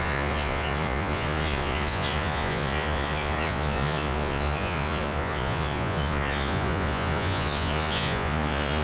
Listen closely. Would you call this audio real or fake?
fake